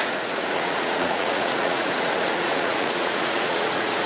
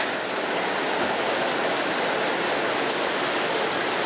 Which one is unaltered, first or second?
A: second